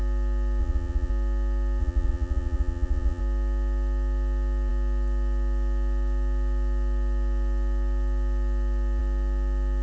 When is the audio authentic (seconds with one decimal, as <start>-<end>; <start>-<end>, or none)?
0.0-0.6; 1.1-1.8; 3.2-9.8